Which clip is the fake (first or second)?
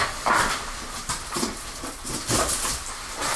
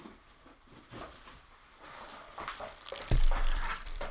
second